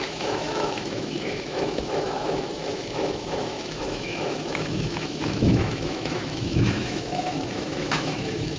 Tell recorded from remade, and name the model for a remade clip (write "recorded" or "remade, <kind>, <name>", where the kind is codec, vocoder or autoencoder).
remade, autoencoder, DAC-VAE